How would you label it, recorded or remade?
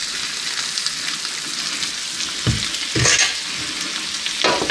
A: recorded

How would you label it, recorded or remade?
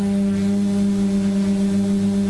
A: recorded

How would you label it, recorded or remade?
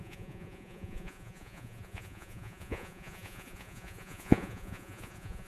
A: remade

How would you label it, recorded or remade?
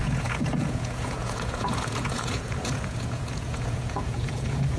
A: remade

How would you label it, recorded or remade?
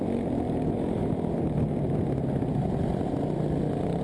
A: recorded